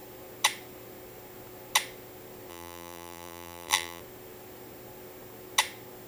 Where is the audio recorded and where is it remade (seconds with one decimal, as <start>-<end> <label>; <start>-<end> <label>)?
0.0-2.5 recorded; 2.5-4.0 remade; 4.0-6.1 recorded